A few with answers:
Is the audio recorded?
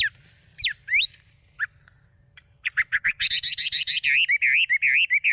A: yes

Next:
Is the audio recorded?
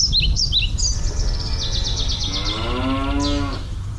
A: yes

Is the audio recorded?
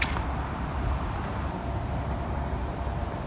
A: yes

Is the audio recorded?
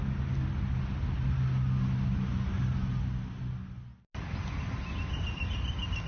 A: yes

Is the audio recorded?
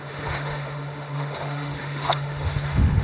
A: no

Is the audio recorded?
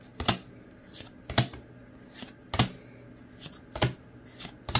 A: yes